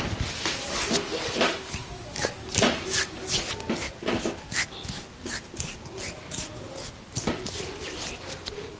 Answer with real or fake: real